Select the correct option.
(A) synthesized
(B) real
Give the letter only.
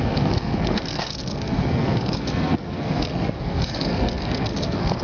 A